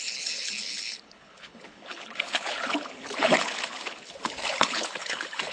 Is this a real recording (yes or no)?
no